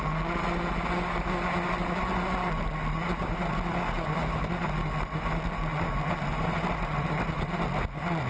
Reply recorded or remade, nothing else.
recorded